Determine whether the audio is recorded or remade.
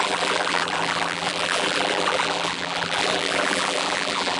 remade